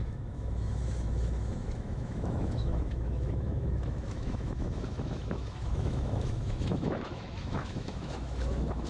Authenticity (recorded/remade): remade